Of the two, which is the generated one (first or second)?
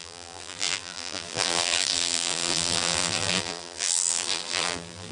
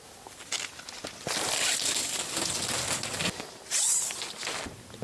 first